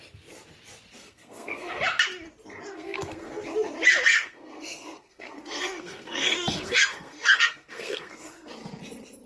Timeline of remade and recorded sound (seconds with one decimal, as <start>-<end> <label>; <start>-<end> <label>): 0.0-1.0 recorded; 1.0-1.8 remade; 1.8-2.7 recorded; 2.7-3.3 remade; 3.3-4.1 recorded; 4.1-8.5 remade; 8.5-9.3 recorded